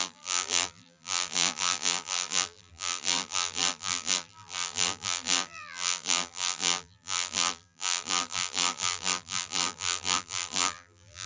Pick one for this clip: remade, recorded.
remade